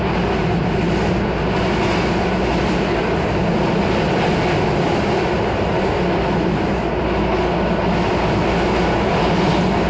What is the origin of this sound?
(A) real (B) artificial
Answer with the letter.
A